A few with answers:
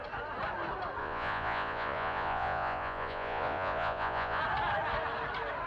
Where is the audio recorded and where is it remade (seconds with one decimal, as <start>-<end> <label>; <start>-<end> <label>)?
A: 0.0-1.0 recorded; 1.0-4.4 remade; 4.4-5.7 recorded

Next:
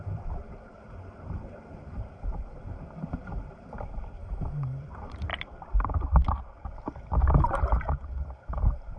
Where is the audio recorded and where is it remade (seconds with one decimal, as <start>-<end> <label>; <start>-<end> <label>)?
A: 0.0-4.2 recorded; 4.2-4.8 remade; 4.8-9.0 recorded

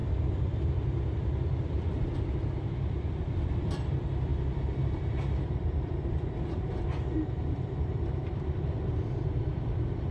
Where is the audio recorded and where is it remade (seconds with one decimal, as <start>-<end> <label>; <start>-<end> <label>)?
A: 0.0-0.6 recorded; 0.6-10.1 remade

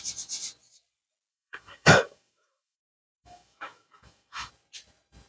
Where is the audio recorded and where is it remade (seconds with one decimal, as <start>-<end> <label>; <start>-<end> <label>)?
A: 0.0-1.3 recorded; 1.3-4.5 remade; 4.5-5.3 recorded

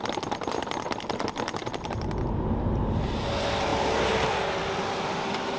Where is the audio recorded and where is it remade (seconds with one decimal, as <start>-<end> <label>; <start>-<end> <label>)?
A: 0.0-5.6 recorded